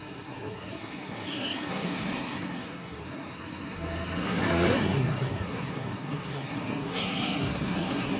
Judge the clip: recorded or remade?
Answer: remade